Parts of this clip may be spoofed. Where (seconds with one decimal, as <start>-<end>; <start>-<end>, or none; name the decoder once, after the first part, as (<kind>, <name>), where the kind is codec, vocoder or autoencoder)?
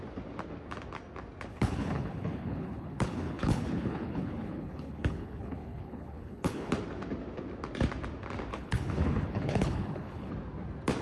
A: 1.5-6.7 (codec, HILCodec); 8.5-10.3